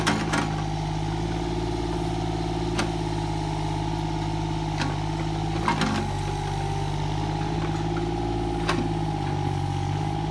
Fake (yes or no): no